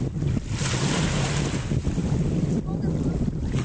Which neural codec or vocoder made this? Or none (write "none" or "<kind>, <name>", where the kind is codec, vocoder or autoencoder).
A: none